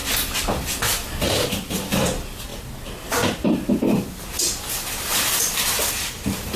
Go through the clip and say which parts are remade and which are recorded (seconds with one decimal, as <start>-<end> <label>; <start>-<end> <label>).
0.0-1.3 recorded; 1.3-2.5 remade; 2.5-3.1 recorded; 3.1-4.4 remade; 4.4-5.1 recorded; 5.1-6.6 remade